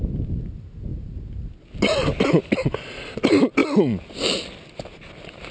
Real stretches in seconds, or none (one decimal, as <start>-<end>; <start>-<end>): 0.0-5.5